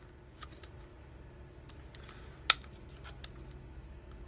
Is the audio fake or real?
real